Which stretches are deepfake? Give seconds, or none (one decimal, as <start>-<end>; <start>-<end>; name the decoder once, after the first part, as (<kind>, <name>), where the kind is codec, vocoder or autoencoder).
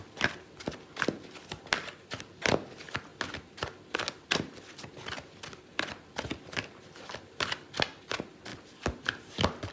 none